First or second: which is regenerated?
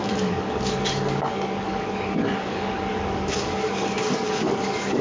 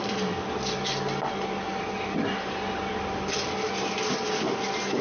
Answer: first